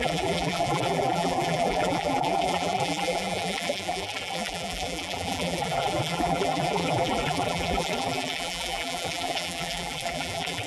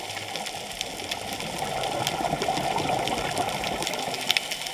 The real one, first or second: second